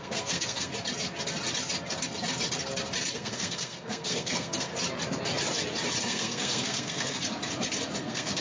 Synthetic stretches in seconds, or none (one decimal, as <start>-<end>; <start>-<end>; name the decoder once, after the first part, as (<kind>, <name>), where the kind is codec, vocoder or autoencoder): 0.0-0.7 (codec, SNAC); 3.1-4.7; 6.0-7.3; 8.0-8.4